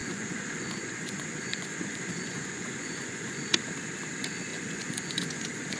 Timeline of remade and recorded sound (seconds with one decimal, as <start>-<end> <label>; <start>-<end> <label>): 0.0-3.5 remade; 3.5-4.5 recorded; 4.5-5.8 remade